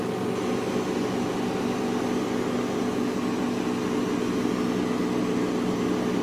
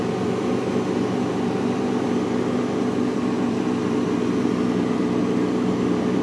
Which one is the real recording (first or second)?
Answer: first